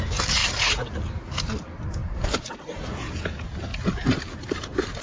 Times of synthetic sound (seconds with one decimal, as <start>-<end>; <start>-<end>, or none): 0.4-1.2; 2.0-2.5; 3.7-5.0

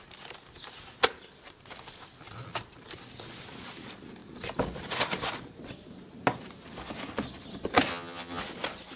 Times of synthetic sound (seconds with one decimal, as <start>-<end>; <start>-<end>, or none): 7.9-8.4

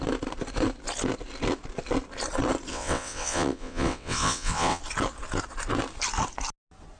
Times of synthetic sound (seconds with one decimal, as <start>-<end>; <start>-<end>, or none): 2.7-4.8